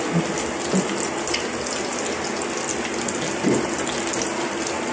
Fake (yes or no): no